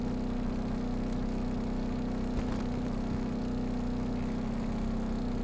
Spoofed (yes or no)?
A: no